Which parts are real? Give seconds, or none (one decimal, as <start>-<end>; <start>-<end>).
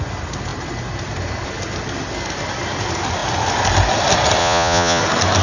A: 0.0-4.4; 5.0-5.4